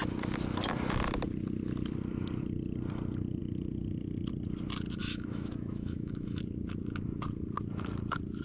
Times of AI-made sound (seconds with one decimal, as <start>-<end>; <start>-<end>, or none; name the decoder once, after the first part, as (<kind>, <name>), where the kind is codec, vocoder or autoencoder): 5.0-6.4 (autoencoder, DAC-VAE)